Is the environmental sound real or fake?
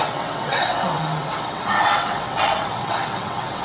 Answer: fake